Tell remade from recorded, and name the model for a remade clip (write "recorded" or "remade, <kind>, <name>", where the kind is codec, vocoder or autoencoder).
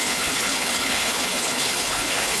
remade, codec, HILCodec